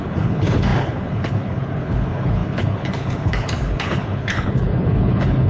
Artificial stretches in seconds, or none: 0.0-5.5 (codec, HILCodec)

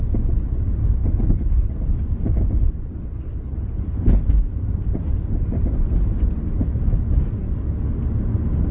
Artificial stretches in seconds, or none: 1.0-1.7 (codec, HILCodec); 2.9-4.2

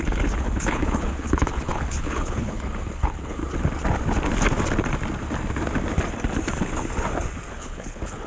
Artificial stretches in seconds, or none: 0.0-3.4 (codec, HILCodec); 7.5-8.3

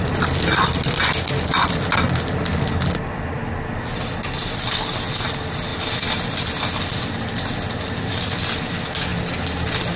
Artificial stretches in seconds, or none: none

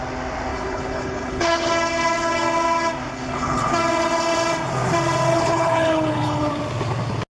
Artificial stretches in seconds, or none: 0.5-1.7 (codec, HILCodec); 3.1-3.7; 5.3-6.5

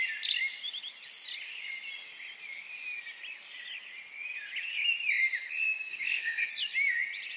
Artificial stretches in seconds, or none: 5.9-6.5 (codec, HILCodec)